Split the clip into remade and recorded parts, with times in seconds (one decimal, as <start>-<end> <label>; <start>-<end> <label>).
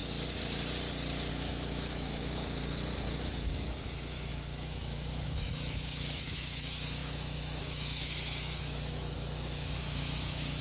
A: 0.0-1.3 recorded; 1.3-2.6 remade; 2.6-3.2 recorded; 3.2-10.6 remade